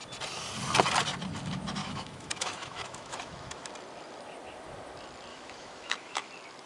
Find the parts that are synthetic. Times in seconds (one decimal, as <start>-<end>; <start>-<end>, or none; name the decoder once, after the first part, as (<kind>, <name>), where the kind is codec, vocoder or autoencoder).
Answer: 1.8-3.7 (autoencoder, DAC-VAE); 5.3-6.3

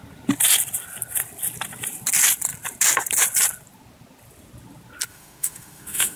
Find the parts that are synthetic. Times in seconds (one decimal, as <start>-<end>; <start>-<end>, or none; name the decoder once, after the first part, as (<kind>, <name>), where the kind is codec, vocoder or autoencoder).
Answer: 5.1-6.2 (autoencoder, DAC-VAE)

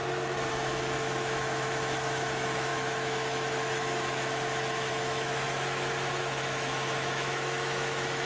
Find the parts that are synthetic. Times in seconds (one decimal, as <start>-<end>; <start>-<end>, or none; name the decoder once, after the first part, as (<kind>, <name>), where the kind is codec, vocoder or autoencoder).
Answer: 0.5-8.3 (autoencoder, DAC-VAE)